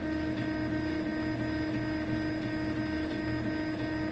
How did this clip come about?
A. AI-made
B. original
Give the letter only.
B